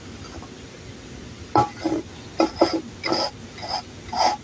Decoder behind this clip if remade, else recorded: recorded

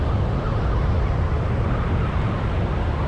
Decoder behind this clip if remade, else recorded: recorded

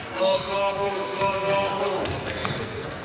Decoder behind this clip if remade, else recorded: remade, codec, SNAC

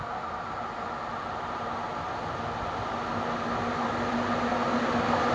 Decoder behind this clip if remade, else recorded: recorded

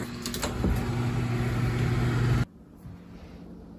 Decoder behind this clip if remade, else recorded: recorded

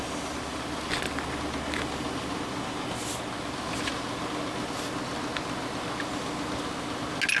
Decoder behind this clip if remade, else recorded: recorded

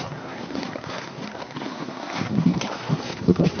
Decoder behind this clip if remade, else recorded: remade, codec, SNAC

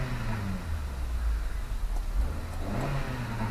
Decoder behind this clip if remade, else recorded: recorded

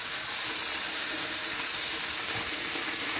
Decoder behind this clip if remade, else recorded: recorded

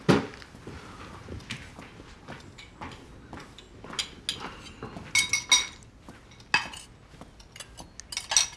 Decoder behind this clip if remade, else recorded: recorded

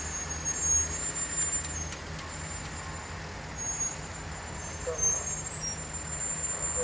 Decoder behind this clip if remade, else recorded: recorded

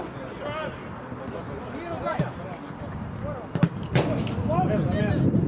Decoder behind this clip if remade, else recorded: recorded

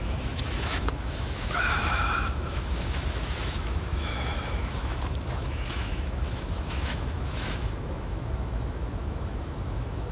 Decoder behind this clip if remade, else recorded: remade, autoencoder, DAC-VAE